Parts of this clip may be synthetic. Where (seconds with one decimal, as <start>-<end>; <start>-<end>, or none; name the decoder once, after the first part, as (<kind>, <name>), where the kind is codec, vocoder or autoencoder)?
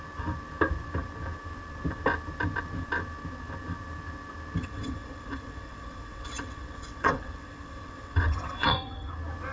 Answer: 4.6-9.1 (vocoder, WaveNeXt)